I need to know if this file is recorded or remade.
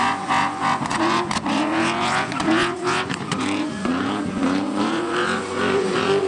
remade